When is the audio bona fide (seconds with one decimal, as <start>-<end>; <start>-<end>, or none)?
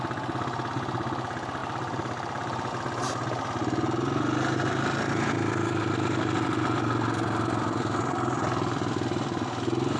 0.0-1.6; 2.7-10.0